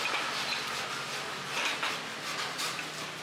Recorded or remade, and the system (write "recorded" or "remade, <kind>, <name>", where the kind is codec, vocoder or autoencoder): recorded